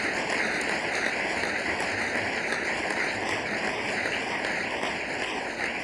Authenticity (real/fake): real